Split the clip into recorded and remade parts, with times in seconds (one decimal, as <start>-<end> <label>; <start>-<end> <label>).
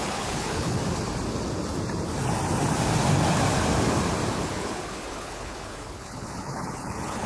0.0-0.8 remade; 0.8-4.3 recorded; 4.3-7.3 remade